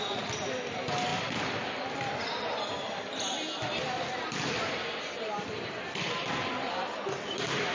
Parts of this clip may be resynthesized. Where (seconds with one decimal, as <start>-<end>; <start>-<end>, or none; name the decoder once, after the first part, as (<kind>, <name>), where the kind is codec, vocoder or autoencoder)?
1.1-2.7 (vocoder, BigVGAN v2)